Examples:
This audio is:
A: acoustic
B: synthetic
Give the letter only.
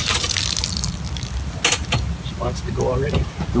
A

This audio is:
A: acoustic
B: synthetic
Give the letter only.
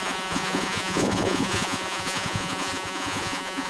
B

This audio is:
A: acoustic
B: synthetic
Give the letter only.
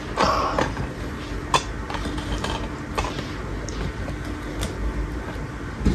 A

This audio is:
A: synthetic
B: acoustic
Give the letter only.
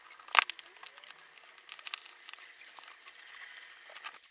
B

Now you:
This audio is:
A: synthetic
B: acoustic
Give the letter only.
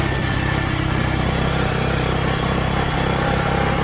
B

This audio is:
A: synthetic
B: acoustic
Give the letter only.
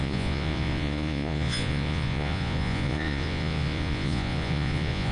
A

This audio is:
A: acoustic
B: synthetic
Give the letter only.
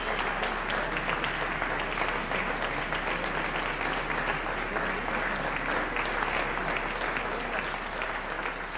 A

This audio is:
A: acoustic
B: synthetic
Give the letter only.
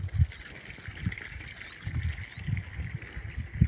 A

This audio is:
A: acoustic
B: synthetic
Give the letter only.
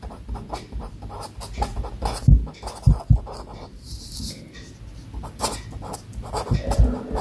A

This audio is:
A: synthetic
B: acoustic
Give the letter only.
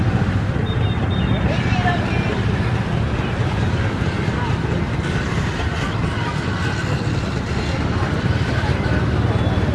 B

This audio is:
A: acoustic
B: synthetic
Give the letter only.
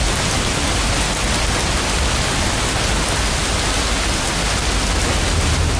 A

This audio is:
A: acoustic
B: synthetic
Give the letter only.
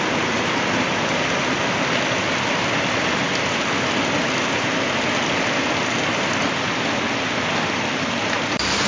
A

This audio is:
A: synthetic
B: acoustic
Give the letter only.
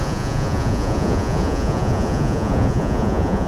A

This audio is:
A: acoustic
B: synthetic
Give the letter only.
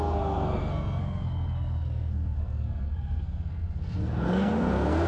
B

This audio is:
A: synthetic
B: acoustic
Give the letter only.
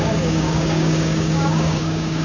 A